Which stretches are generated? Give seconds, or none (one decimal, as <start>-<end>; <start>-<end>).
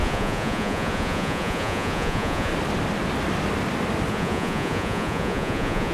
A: 0.0-2.5; 4.1-5.9